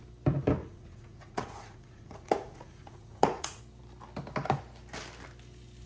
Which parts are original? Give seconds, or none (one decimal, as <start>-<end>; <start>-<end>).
0.0-0.6; 3.6-5.9